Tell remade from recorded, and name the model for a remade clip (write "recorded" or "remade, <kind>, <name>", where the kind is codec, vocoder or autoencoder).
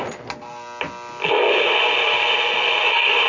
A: recorded